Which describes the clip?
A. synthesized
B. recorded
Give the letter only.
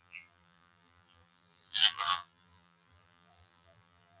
A